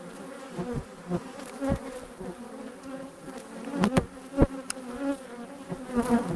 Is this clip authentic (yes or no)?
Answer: yes